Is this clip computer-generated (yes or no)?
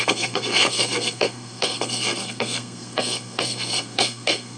yes